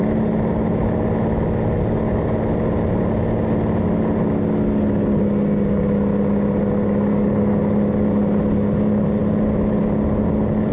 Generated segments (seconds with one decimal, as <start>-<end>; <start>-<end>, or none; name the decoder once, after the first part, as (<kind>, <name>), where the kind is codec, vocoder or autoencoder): none

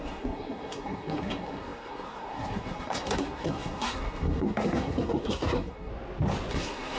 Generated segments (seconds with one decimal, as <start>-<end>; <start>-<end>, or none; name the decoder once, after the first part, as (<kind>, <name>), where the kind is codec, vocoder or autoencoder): 0.0-5.9 (codec, SNAC); 6.5-7.0

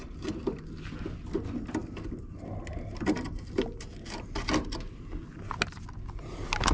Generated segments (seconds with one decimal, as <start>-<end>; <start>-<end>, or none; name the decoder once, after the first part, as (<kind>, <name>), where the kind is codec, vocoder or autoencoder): none